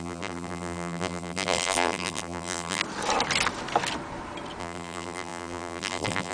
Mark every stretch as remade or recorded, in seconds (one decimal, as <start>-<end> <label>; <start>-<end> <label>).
0.0-2.8 remade; 2.8-4.6 recorded; 4.6-6.3 remade